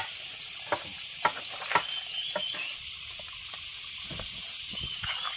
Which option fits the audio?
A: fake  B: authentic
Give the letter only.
B